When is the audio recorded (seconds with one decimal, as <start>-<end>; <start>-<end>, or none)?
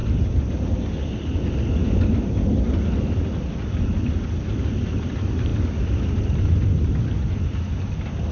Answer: 0.0-8.3